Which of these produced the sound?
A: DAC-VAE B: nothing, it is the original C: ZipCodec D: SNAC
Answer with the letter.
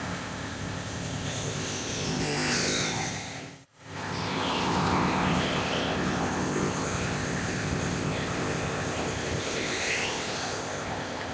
C